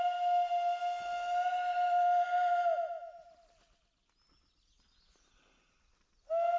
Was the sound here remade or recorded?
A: recorded